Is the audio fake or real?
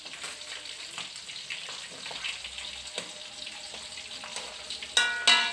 real